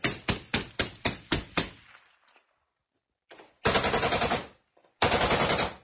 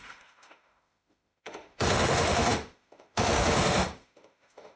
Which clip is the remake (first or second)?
second